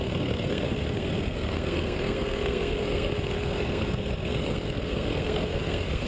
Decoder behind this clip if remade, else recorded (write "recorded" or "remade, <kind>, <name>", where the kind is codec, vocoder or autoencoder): remade, codec, SNAC